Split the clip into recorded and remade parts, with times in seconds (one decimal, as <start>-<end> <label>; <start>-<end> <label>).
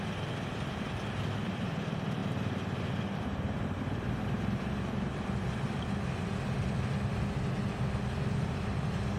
0.0-9.2 recorded